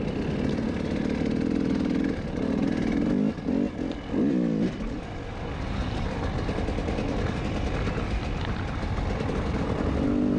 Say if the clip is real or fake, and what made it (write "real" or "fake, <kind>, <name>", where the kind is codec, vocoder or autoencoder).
real